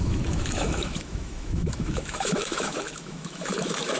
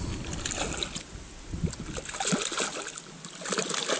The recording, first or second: second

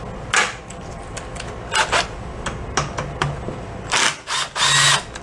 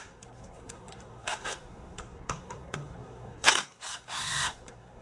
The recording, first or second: first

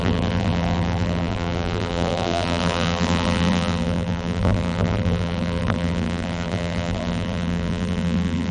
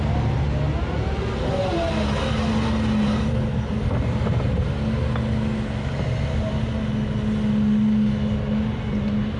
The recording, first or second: second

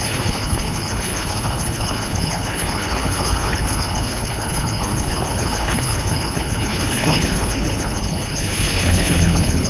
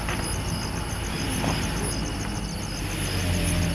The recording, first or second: second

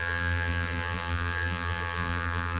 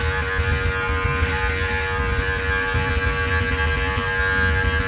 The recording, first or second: second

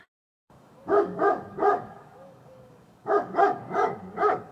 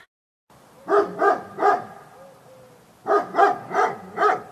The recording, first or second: second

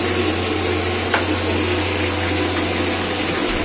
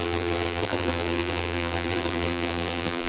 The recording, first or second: first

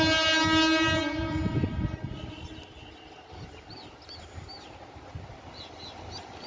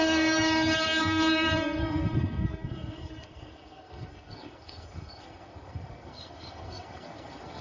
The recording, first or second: first